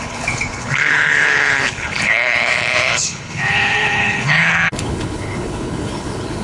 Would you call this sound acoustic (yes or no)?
no